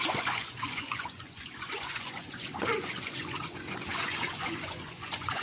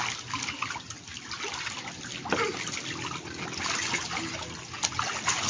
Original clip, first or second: second